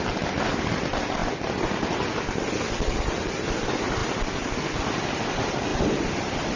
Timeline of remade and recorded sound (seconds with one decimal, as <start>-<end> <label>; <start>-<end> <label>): 0.0-6.6 recorded